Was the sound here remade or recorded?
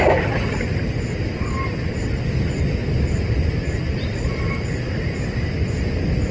recorded